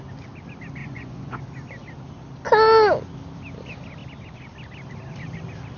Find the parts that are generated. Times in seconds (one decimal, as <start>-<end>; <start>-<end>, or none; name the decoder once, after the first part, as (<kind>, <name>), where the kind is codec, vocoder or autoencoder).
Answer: 0.8-1.4 (vocoder, Vocos)